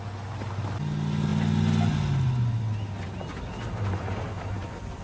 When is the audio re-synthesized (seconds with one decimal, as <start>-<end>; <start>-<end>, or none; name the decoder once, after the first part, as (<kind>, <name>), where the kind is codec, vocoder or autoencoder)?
none